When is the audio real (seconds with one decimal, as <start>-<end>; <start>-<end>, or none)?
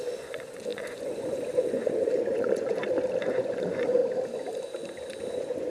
2.8-3.3; 4.0-5.2